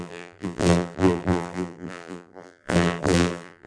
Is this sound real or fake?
fake